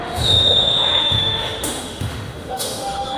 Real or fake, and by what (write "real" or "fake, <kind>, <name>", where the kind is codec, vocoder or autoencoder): fake, autoencoder, DAC-VAE